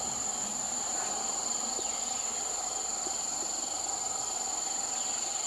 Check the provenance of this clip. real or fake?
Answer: real